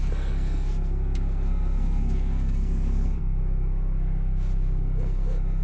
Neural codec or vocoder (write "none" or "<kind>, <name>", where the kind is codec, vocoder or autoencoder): codec, SNAC